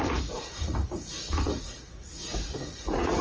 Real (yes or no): no